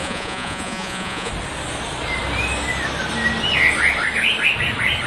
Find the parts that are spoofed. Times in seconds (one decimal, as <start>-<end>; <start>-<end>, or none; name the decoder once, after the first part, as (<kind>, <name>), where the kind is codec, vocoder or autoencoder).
0.0-1.3 (vocoder, Vocos)